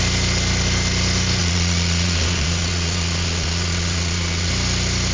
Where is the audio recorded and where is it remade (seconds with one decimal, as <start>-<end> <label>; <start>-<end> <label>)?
0.0-1.4 recorded; 1.4-4.5 remade; 4.5-5.1 recorded